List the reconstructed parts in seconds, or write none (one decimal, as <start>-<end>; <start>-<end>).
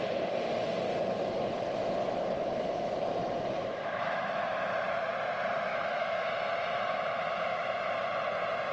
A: 2.0-3.0; 3.6-4.7; 5.7-6.3